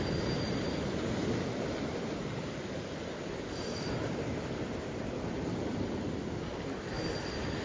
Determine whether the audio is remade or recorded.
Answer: recorded